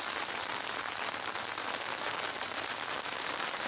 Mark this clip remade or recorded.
remade